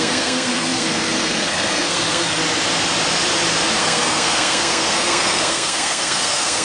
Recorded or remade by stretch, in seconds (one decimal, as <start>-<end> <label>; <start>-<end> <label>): 0.0-2.4 remade; 2.4-3.8 recorded; 3.8-6.6 remade